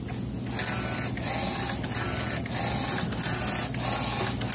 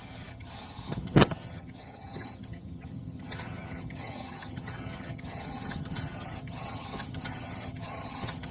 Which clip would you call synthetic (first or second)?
second